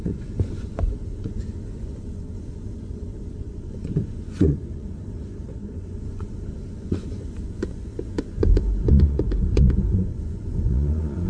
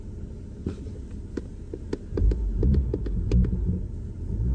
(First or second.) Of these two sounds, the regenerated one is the first